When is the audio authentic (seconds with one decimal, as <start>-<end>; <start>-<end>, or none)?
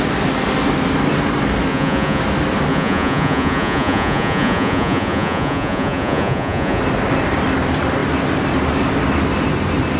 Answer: 0.0-1.7; 2.2-2.7; 6.8-10.0